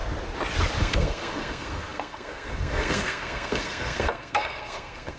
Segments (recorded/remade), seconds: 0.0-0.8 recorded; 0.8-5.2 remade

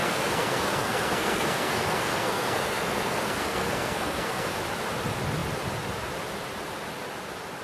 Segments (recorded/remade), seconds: 0.0-4.6 remade; 4.6-7.6 recorded

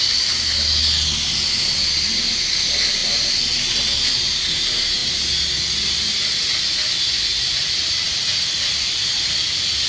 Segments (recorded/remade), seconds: 0.0-9.9 recorded

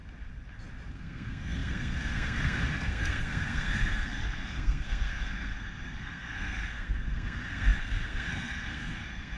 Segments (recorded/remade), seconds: 0.0-0.9 recorded; 0.9-9.4 remade

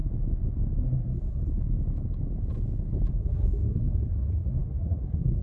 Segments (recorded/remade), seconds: 0.0-0.8 recorded; 0.8-1.4 remade; 1.4-3.1 recorded; 3.1-5.4 remade

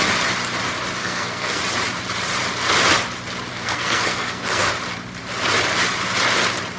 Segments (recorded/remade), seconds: 0.0-1.0 recorded; 1.0-1.6 remade; 1.6-3.5 recorded; 3.5-4.7 remade; 4.7-6.8 recorded

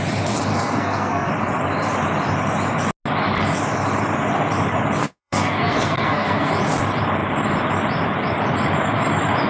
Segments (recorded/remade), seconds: 0.0-0.5 recorded; 0.5-1.3 remade; 1.3-5.0 recorded; 5.0-6.5 remade; 6.5-9.5 recorded